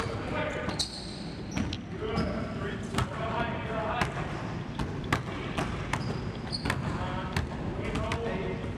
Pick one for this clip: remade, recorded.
recorded